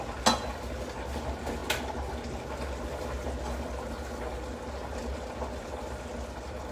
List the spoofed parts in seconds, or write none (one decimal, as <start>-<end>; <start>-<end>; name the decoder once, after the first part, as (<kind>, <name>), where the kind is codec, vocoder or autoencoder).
none